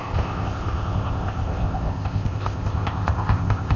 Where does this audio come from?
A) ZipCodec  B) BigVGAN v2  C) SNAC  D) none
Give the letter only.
A